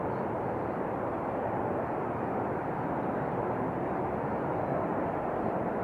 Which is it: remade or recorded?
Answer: recorded